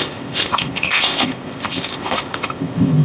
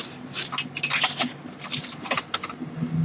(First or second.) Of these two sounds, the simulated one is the first